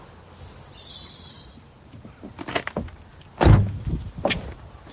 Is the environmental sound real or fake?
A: real